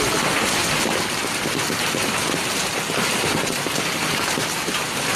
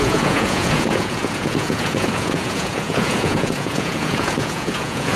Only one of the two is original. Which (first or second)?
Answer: first